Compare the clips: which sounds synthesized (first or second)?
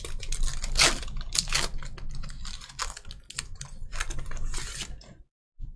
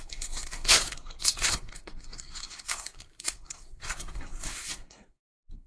second